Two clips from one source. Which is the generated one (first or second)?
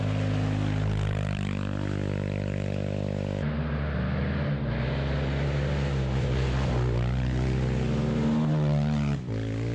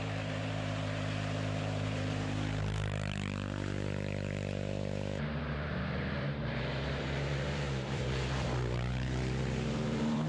second